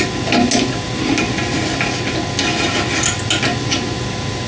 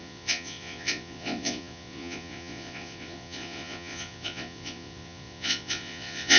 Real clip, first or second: first